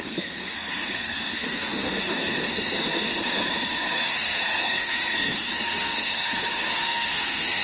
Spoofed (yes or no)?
yes